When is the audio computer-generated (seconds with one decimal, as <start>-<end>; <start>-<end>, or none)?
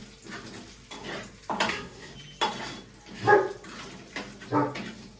1.7-2.1